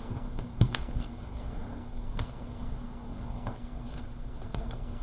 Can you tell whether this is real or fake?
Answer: fake